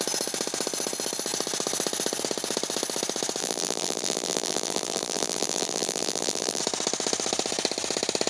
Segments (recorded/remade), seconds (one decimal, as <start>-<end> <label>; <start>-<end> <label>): 0.0-3.4 recorded; 3.4-6.6 remade; 6.6-8.3 recorded